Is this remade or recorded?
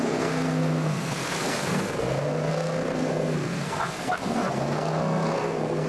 remade